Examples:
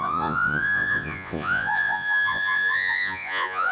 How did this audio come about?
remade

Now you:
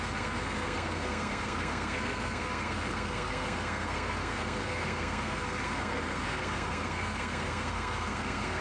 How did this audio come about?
remade